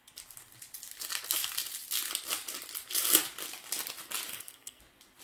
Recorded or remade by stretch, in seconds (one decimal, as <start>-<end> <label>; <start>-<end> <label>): 0.0-4.3 recorded; 4.3-4.8 remade; 4.8-5.2 recorded